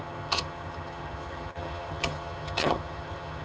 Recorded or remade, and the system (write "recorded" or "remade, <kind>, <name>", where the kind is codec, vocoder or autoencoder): remade, vocoder, HiFi-GAN